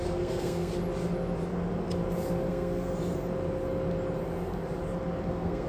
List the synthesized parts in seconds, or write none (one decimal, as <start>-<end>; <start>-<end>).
0.0-0.7; 2.5-2.9; 5.3-5.7